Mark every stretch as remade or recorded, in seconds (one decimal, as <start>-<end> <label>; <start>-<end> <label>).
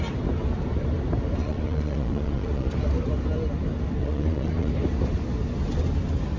0.0-1.4 recorded; 1.4-2.7 remade; 2.7-4.0 recorded; 4.0-4.7 remade; 4.7-6.4 recorded